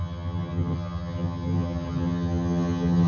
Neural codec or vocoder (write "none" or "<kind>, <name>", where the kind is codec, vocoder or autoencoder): vocoder, HiFi-GAN